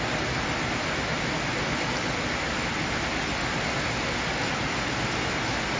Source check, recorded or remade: recorded